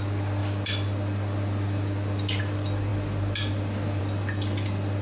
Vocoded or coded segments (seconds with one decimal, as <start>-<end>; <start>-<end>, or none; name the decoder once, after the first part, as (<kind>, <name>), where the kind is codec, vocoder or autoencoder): none

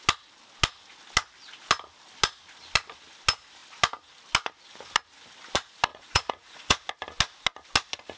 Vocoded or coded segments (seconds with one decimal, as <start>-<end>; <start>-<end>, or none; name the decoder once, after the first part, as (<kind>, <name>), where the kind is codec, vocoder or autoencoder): 5.9-6.9 (vocoder, Vocos)

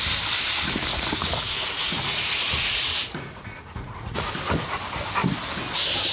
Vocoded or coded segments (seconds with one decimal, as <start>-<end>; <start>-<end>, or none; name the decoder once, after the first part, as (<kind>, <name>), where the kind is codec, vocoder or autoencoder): 0.9-4.3 (vocoder, Vocos)

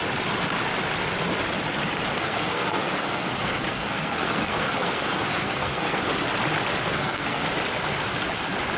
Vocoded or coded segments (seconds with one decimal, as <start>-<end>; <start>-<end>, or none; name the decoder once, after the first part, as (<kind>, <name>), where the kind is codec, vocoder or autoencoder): 2.1-6.1 (codec, SNAC); 6.9-7.5

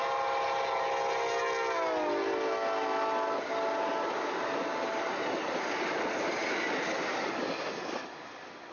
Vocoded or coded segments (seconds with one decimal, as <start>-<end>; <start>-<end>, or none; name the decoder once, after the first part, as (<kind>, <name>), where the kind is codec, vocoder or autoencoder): none

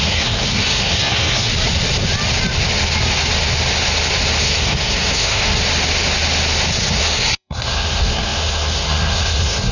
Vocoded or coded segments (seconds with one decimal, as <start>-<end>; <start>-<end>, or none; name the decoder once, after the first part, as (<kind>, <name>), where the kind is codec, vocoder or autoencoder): 0.0-1.5 (codec, SNAC); 4.4-5.6; 6.9-9.7